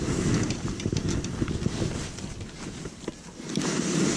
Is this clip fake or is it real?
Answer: real